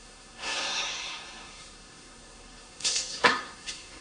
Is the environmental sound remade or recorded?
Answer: remade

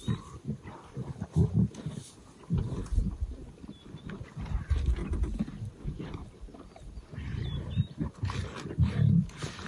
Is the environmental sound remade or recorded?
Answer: recorded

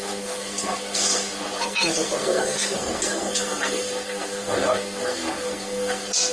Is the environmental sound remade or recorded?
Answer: remade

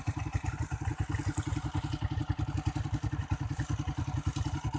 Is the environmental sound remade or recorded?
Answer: recorded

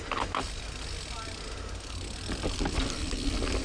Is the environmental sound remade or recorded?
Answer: recorded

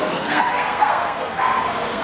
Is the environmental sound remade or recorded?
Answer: remade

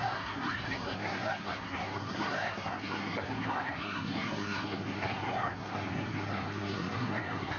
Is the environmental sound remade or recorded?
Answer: remade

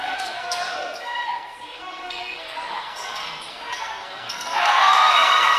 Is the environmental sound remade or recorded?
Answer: remade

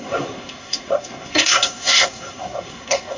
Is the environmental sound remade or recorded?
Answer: remade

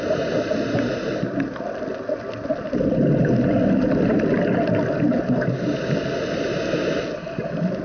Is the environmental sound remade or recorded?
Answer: recorded